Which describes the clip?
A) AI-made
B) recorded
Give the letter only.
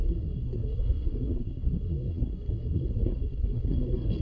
A